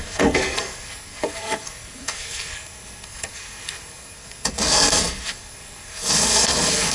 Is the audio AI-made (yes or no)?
yes